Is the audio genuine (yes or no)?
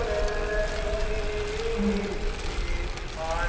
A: yes